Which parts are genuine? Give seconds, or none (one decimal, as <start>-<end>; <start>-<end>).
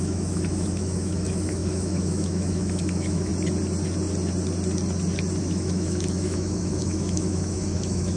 3.3-5.4